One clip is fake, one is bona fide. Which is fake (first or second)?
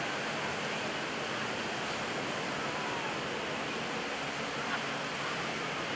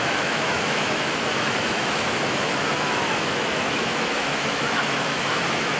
second